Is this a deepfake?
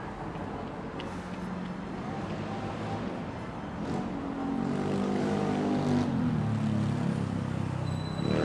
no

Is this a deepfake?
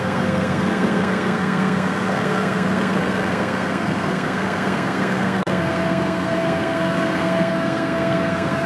yes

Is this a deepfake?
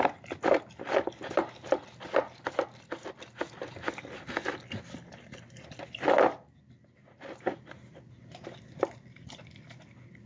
no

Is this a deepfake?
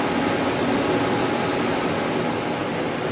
no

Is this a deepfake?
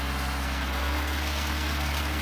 yes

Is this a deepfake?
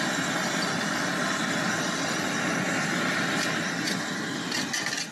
no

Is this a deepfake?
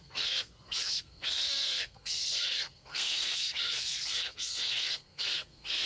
yes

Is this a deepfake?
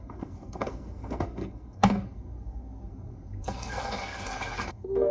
yes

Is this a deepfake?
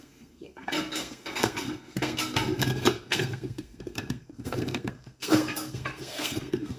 yes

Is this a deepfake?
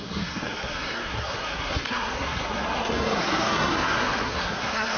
yes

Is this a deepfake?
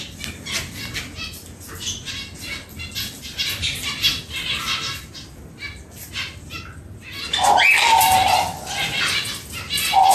no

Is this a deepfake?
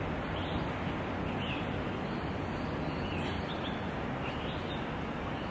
no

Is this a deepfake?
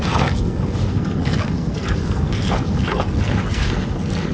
yes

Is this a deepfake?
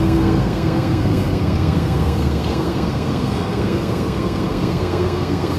yes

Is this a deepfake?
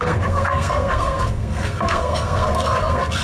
yes